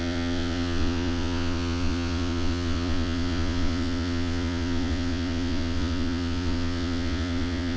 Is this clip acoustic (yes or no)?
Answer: no